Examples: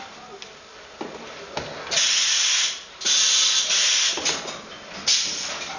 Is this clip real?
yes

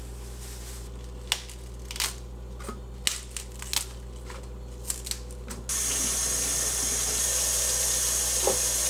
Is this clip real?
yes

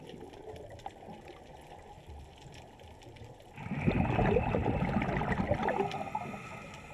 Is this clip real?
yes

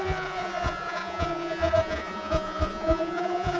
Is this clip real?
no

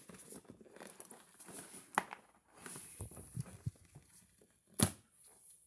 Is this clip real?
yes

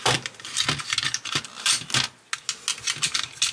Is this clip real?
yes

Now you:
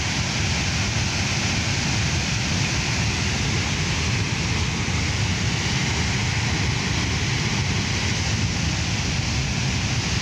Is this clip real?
yes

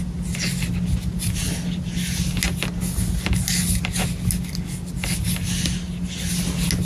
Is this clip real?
yes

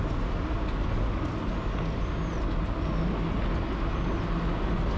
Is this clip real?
yes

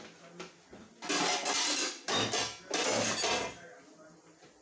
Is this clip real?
yes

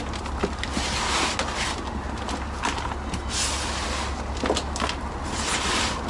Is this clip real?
yes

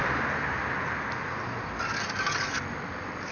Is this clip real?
yes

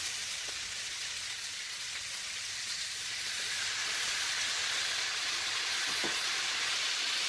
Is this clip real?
no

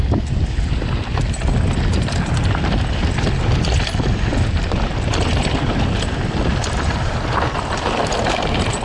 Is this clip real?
yes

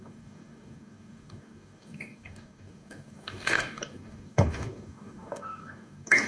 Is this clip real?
no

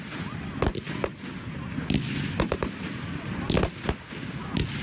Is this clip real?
yes